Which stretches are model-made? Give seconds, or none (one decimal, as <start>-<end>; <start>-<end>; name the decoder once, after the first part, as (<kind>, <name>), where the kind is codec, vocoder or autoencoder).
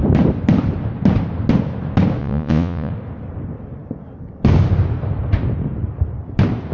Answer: 2.2-2.9 (vocoder, Vocos)